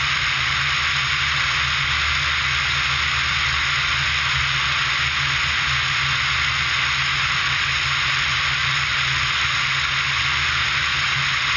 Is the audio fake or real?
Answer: real